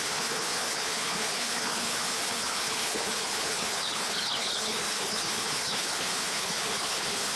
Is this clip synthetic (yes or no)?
yes